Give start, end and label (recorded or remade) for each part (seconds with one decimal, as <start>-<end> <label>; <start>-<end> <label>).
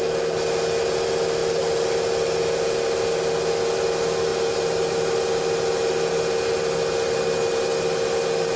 0.0-8.6 recorded